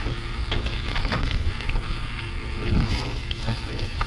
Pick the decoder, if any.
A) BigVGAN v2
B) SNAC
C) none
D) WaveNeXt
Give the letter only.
B